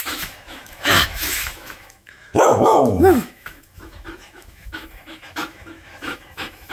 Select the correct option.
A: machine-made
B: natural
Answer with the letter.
A